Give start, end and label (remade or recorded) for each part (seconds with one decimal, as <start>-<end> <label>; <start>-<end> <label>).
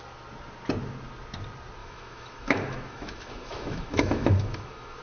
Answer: 0.0-1.8 recorded; 1.8-5.0 remade